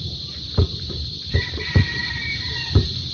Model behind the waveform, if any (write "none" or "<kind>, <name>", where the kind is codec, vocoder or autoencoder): vocoder, BigVGAN v2